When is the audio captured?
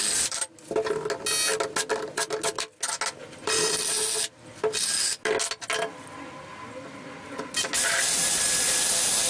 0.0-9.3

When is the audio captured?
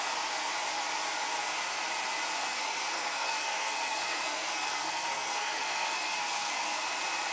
0.0-2.4; 6.8-7.3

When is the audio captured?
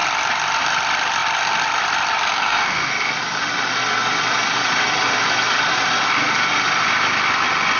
0.0-2.3; 2.9-7.8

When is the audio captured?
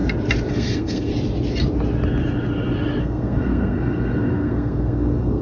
0.0-0.5; 1.1-3.0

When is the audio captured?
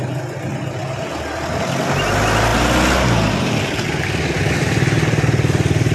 0.0-5.9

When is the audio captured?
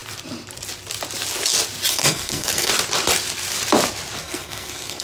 0.0-1.9; 2.7-4.2